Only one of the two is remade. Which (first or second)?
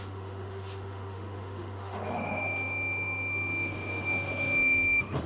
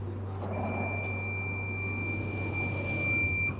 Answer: first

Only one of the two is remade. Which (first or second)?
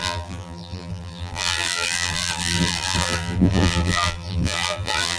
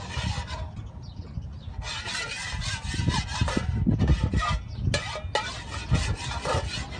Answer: first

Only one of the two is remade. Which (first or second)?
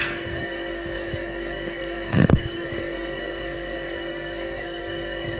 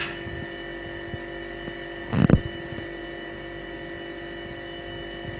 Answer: first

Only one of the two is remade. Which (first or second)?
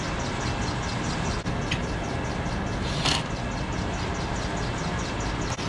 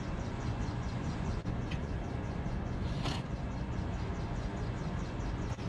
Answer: second